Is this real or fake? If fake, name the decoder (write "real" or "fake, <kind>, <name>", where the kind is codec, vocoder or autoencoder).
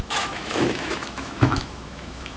fake, autoencoder, DAC-VAE